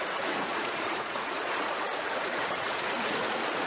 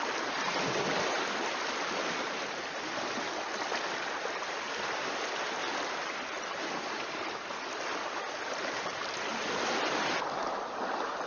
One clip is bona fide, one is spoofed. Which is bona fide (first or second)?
second